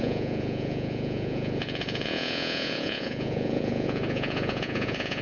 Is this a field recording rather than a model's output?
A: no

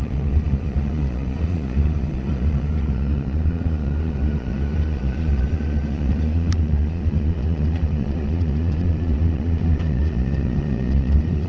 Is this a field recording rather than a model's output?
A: no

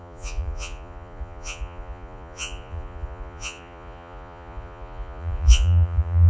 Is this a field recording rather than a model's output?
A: no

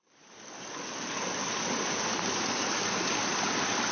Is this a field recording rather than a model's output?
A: yes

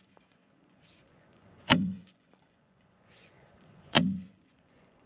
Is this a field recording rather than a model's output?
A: no